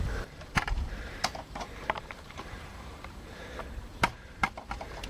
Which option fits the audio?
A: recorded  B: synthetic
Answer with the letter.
B